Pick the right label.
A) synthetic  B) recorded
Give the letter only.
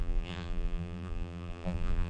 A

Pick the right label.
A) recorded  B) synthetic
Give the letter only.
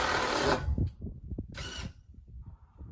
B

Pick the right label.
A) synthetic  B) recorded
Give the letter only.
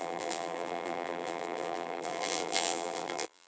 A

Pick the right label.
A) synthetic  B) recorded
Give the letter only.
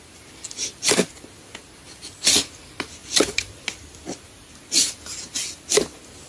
B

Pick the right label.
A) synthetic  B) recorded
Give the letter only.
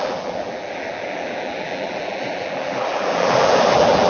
A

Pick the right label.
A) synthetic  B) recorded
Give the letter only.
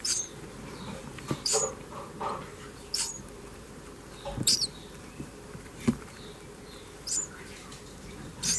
A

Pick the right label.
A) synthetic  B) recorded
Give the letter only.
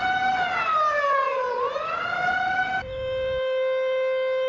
B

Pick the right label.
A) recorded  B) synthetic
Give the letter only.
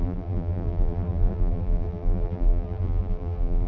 B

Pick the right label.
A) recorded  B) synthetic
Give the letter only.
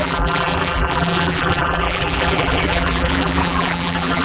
B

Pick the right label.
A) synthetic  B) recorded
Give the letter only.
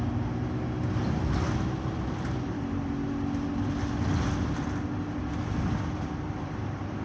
B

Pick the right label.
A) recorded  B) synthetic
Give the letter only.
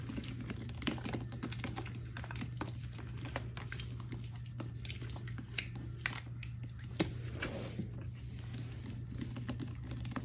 A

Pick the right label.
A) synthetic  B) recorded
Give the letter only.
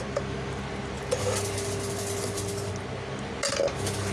B